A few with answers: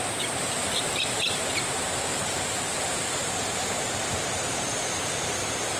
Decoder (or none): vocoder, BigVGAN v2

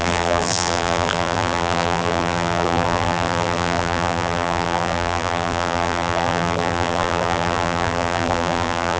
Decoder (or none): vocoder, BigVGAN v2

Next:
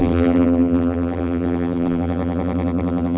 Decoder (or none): vocoder, BigVGAN v2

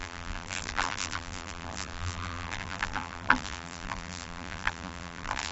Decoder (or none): vocoder, BigVGAN v2